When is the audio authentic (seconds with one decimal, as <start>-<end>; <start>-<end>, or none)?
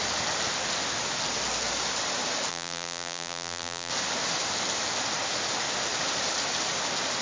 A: 0.0-2.5; 3.9-7.2